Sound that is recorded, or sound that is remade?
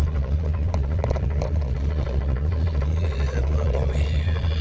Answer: remade